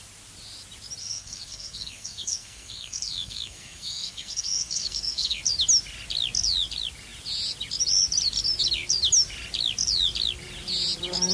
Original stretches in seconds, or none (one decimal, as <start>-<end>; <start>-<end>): 0.0-1.0; 5.4-11.3